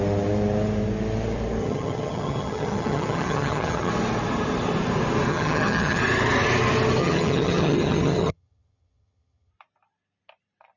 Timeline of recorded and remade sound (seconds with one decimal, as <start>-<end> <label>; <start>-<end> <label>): 0.0-1.6 recorded; 1.6-3.9 remade; 3.9-5.3 recorded; 5.3-6.0 remade; 6.0-7.0 recorded; 7.0-9.5 remade; 9.5-10.8 recorded